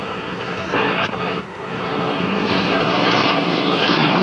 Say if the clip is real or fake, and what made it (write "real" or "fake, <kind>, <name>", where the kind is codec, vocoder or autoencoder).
fake, codec, SNAC